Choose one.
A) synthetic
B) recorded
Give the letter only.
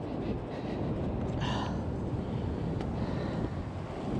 B